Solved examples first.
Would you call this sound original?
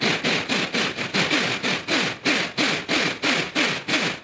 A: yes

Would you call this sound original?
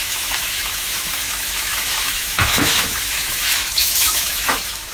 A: no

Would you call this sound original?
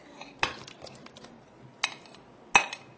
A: yes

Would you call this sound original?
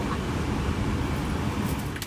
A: yes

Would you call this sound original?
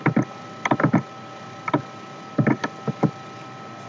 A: yes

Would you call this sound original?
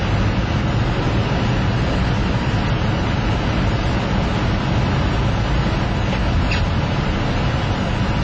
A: yes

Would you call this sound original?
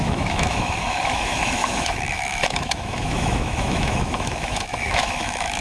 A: no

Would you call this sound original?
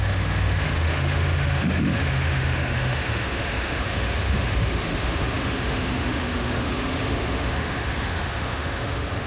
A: no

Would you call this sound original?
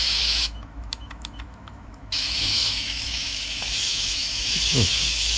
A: no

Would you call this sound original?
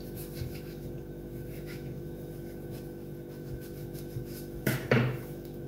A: no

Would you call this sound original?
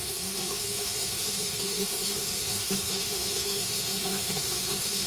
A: no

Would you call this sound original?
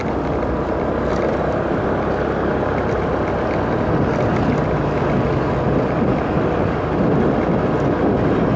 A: yes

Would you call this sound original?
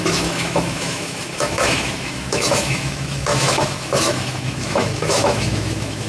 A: no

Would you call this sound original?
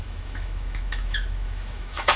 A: no